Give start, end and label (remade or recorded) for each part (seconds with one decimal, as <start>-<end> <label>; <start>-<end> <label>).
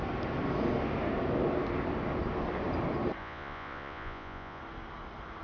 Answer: 0.0-3.2 recorded; 3.2-4.6 remade; 4.6-5.4 recorded